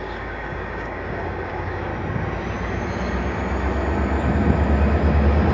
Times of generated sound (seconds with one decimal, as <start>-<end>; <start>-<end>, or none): 0.0-1.9